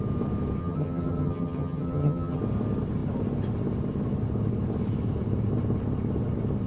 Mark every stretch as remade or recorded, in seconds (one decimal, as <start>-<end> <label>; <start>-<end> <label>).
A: 0.0-0.6 recorded; 0.6-2.4 remade; 2.4-6.7 recorded

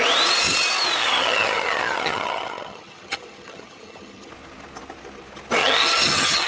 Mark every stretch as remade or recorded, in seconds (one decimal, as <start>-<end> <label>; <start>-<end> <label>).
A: 0.0-1.0 recorded; 1.0-4.3 remade; 4.3-5.6 recorded; 5.6-6.5 remade

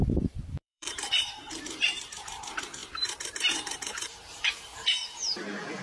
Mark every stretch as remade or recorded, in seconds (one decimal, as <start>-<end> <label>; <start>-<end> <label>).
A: 0.0-0.6 recorded; 0.6-1.1 remade; 1.1-2.8 recorded; 2.8-4.6 remade; 4.6-5.8 recorded